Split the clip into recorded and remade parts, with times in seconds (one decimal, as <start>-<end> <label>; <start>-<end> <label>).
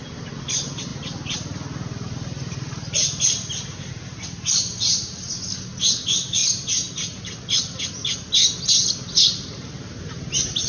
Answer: 0.0-10.7 recorded